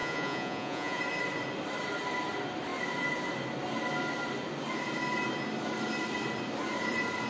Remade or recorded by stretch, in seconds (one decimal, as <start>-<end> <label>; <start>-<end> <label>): 0.0-1.0 remade; 1.0-7.3 recorded